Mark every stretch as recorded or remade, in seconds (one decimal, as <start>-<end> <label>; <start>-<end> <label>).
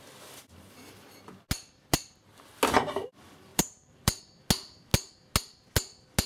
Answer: 0.0-3.5 recorded; 3.5-4.2 remade; 4.2-6.3 recorded